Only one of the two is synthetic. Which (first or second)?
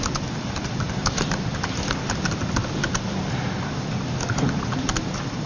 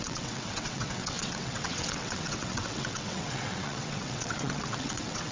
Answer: second